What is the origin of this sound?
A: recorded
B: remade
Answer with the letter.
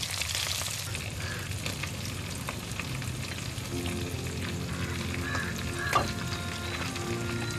A